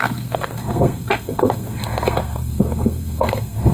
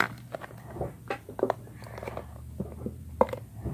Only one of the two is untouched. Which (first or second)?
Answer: second